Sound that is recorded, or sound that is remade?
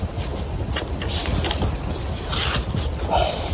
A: recorded